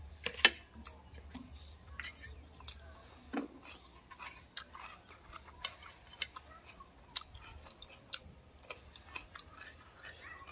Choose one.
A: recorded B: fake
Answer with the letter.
A